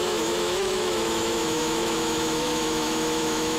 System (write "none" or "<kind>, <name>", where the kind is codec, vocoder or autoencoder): autoencoder, DAC-VAE